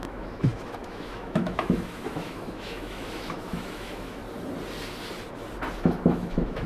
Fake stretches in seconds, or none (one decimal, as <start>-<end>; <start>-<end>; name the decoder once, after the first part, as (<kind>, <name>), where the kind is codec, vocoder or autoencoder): 0.0-4.2 (autoencoder, DAC-VAE); 5.8-6.7